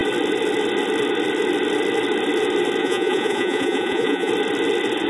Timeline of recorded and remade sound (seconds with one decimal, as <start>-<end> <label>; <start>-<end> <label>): 0.0-2.8 recorded; 2.8-4.3 remade; 4.3-5.1 recorded